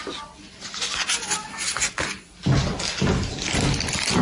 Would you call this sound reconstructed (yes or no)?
no